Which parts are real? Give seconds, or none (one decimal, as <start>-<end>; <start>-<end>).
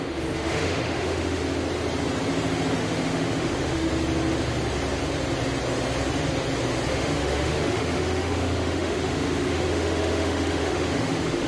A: 1.4-2.8; 3.9-6.9